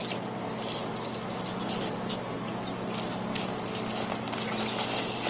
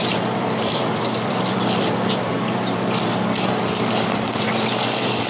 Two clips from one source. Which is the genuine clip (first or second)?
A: first